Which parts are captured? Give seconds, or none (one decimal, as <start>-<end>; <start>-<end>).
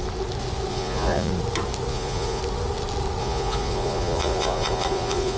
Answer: 0.0-0.7; 1.3-1.9; 2.4-3.2